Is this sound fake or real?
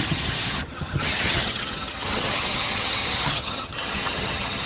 fake